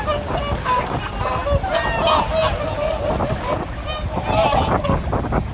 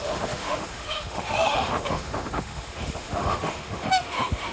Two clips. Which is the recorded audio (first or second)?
first